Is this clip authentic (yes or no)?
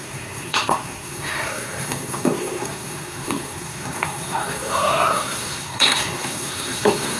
no